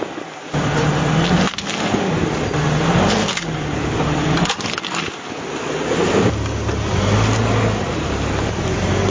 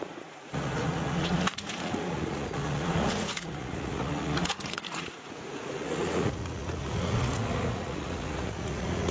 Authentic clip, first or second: first